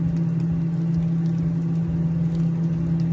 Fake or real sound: real